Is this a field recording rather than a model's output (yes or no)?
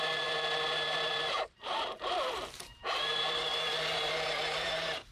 no